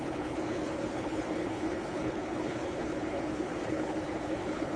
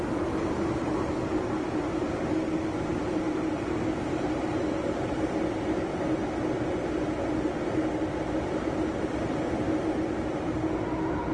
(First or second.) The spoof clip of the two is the first